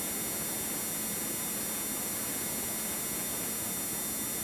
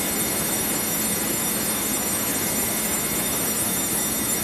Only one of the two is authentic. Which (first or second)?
first